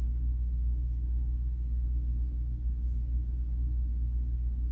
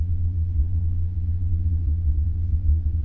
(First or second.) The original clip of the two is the first